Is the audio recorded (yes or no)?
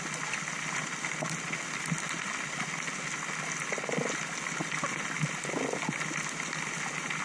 yes